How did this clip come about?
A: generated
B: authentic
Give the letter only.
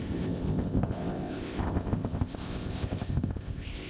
A